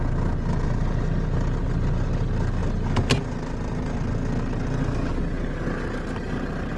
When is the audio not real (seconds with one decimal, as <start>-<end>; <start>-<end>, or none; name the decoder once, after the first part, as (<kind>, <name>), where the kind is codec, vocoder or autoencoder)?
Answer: none